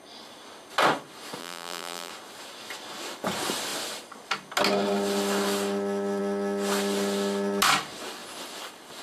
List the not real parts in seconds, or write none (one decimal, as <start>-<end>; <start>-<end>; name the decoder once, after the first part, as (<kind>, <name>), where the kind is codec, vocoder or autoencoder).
1.4-2.1 (vocoder, BigVGAN v2)